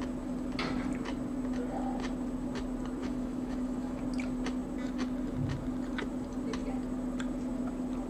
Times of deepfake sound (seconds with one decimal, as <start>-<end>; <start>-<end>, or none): 3.0-4.0